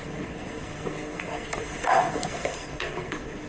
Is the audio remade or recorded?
remade